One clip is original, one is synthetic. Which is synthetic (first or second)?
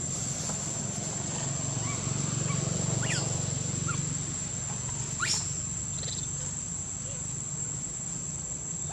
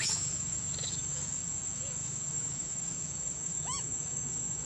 second